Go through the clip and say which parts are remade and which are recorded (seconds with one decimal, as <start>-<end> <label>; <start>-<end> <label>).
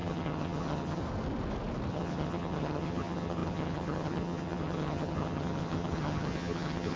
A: 0.0-1.0 remade; 1.0-1.9 recorded; 1.9-7.0 remade